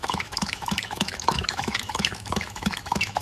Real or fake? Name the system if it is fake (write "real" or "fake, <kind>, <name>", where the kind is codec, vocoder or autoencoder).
fake, autoencoder, DAC-VAE